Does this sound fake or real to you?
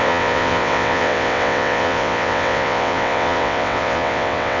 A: fake